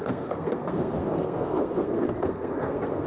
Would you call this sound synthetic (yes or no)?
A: yes